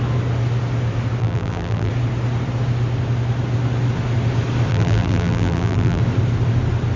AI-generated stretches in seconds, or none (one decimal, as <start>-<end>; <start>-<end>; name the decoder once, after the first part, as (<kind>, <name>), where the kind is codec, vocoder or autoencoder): 1.2-1.9 (vocoder, BigVGAN v2); 4.7-6.0